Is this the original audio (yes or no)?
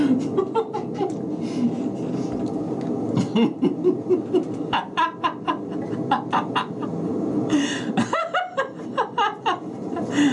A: yes